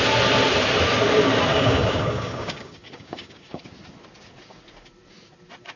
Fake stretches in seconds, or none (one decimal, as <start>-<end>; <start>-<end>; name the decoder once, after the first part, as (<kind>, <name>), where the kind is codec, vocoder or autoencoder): 1.5-3.6 (codec, DAC)